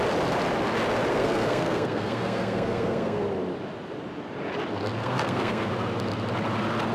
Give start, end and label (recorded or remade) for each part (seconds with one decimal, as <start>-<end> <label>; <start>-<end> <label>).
0.0-1.1 recorded; 1.1-3.2 remade; 3.2-5.0 recorded; 5.0-5.7 remade; 5.7-6.9 recorded

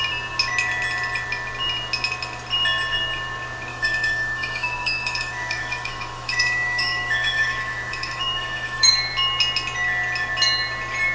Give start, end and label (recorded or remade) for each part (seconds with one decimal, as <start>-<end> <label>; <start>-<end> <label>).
0.0-3.7 recorded; 3.7-8.9 remade; 8.9-11.1 recorded

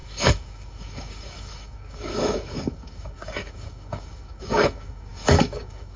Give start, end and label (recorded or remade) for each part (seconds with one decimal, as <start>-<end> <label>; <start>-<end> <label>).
0.0-6.0 remade

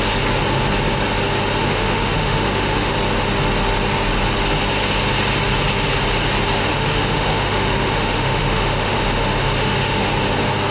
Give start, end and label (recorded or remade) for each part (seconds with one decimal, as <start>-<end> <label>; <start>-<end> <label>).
0.0-1.6 recorded; 1.6-2.9 remade; 2.9-6.7 recorded; 6.7-10.1 remade; 10.1-10.7 recorded